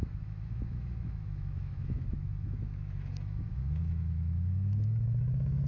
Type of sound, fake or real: fake